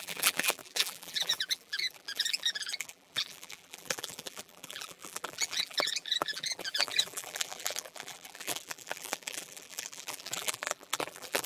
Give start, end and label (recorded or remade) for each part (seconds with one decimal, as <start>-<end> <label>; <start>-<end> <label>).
0.0-11.5 remade